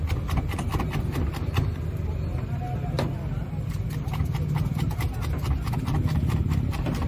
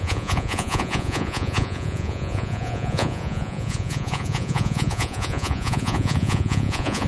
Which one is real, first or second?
first